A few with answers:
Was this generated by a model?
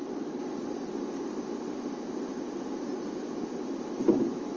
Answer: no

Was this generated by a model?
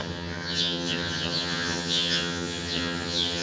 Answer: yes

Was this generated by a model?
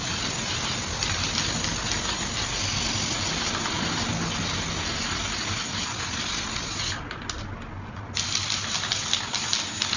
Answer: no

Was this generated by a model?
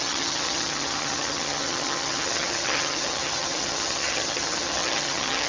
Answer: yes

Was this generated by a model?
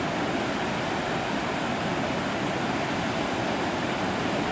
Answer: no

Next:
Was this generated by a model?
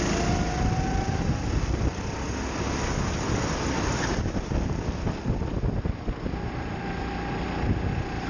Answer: no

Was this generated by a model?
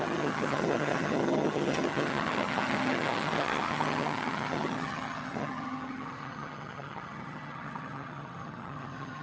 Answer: yes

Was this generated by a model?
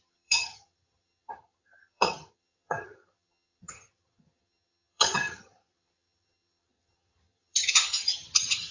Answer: yes